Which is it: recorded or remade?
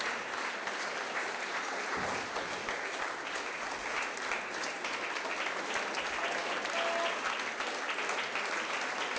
recorded